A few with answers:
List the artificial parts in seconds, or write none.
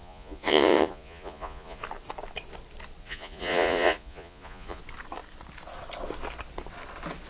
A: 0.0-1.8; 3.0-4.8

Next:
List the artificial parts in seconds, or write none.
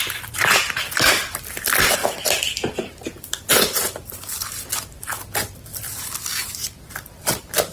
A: none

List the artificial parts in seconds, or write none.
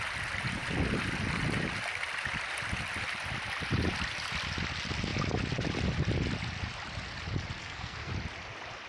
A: 7.6-8.1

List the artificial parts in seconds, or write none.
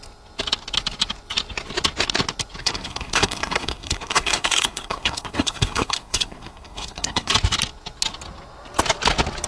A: 2.6-7.3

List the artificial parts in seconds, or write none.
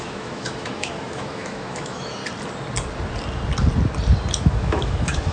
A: 0.0-2.2; 4.4-5.3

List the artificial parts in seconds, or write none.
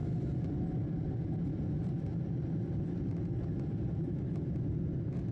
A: 2.1-5.3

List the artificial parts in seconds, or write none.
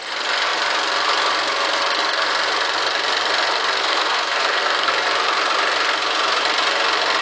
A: 3.8-4.9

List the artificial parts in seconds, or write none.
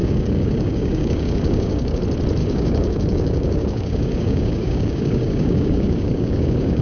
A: 0.0-2.0; 2.4-6.8